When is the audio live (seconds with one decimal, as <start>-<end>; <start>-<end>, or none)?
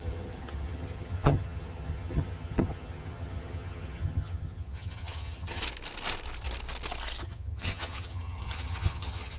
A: 5.6-7.2